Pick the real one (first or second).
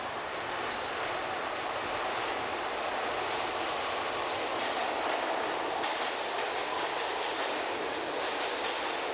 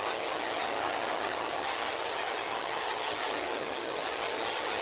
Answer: first